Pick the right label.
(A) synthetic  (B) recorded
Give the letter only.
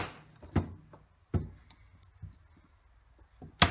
B